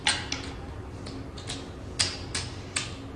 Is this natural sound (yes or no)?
yes